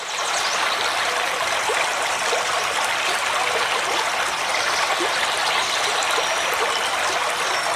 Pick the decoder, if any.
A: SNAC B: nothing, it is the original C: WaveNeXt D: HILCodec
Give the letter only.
B